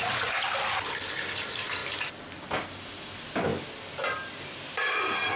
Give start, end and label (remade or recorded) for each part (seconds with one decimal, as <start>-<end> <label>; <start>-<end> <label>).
0.0-1.8 remade; 1.8-2.7 recorded; 2.7-3.5 remade; 3.5-4.4 recorded; 4.4-5.4 remade